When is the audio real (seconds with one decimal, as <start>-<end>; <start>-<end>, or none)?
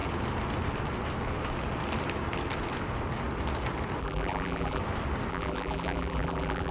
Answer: 0.0-4.0; 4.8-5.3